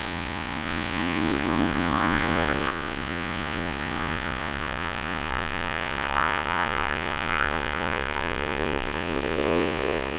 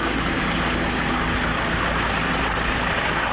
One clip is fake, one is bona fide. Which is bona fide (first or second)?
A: second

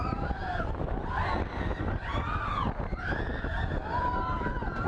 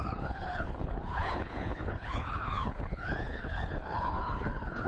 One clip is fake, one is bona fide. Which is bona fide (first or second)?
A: first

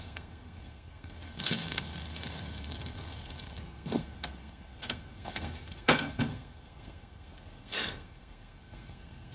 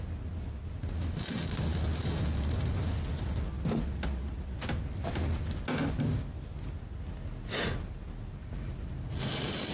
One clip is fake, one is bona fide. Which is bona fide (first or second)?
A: second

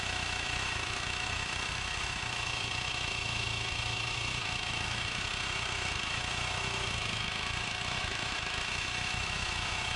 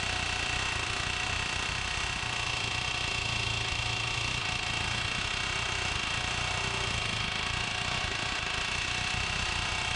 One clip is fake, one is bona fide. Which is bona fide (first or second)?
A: second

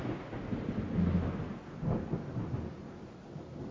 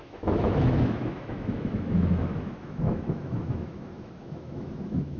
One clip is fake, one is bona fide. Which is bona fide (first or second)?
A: first